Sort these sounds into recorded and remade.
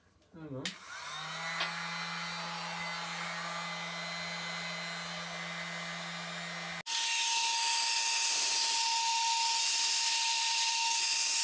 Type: recorded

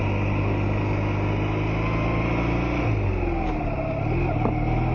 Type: recorded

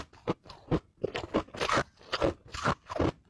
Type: recorded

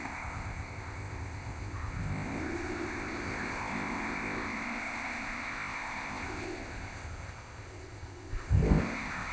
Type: remade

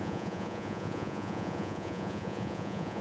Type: remade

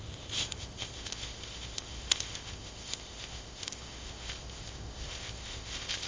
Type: remade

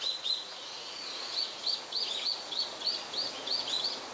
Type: remade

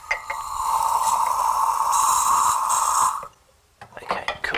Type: recorded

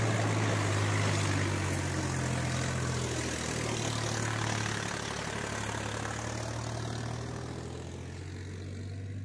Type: recorded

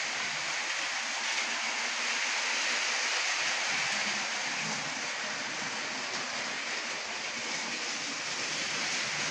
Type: recorded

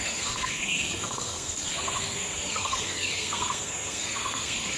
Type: remade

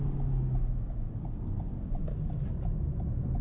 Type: recorded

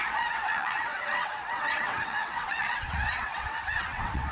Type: remade